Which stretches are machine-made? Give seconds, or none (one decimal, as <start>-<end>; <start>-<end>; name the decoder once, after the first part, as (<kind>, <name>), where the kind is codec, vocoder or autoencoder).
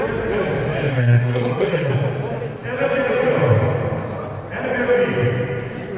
0.9-1.9 (codec, SNAC)